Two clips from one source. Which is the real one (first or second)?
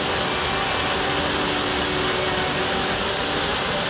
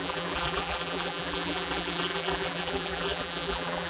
first